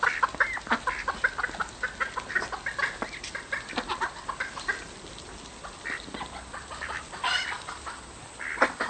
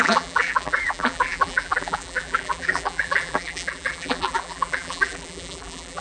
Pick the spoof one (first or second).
second